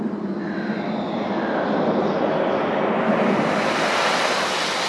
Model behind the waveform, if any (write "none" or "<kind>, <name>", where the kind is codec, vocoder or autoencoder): none